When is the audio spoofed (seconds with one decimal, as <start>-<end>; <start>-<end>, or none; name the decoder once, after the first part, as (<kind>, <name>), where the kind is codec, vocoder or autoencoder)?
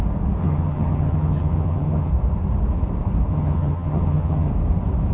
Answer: 0.4-2.1 (vocoder, HiFi-GAN); 3.3-4.5